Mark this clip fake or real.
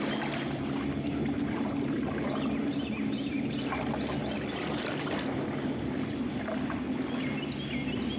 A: real